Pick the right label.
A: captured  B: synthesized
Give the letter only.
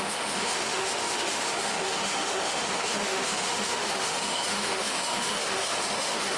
B